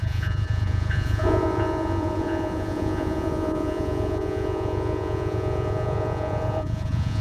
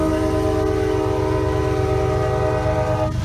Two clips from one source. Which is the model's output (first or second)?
first